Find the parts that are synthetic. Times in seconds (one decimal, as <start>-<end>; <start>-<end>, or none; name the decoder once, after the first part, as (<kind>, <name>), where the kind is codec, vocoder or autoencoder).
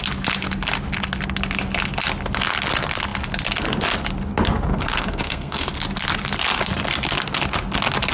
4.7-5.7 (codec, SNAC)